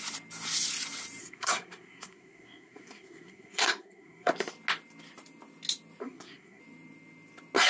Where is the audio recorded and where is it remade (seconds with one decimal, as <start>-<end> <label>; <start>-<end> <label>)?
0.0-1.2 recorded; 1.2-4.3 remade; 4.3-6.0 recorded; 6.0-6.6 remade; 6.6-7.7 recorded

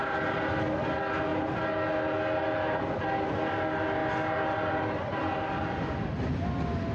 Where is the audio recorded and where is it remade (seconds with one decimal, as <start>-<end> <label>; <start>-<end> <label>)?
0.0-6.9 recorded

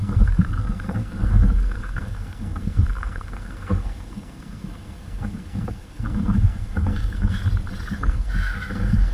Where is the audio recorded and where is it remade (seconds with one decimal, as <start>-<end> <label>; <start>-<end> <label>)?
0.0-7.4 remade; 7.4-7.9 recorded; 7.9-9.1 remade

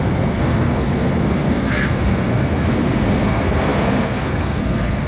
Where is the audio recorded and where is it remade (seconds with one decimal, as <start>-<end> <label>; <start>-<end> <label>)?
0.0-5.1 remade

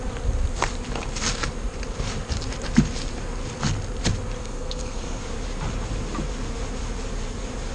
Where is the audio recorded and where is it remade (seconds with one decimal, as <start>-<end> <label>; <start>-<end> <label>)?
0.0-4.4 recorded; 4.4-5.2 remade; 5.2-7.7 recorded

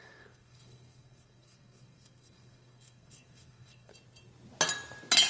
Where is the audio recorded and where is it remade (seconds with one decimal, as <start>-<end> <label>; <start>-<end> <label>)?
0.0-3.9 remade; 3.9-5.3 recorded